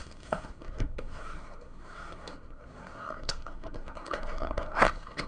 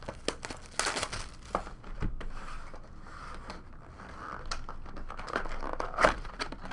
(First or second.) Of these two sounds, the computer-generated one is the first